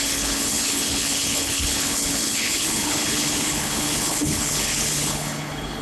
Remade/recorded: remade